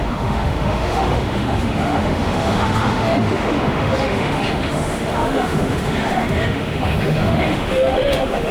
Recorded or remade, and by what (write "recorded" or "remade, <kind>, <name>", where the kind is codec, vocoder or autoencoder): remade, autoencoder, DAC-VAE